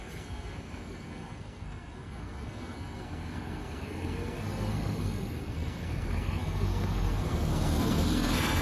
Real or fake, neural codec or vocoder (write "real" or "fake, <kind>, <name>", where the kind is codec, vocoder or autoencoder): fake, codec, SNAC